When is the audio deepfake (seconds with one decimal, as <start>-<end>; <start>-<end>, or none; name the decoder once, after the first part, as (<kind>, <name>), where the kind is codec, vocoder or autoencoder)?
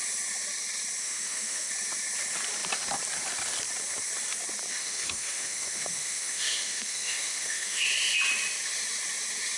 1.0-1.7 (autoencoder, DAC-VAE); 4.7-7.8